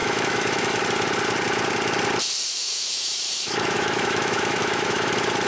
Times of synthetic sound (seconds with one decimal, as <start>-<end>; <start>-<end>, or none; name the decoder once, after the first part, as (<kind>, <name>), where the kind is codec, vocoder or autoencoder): 0.0-0.8 (autoencoder, DAC-VAE); 2.5-5.1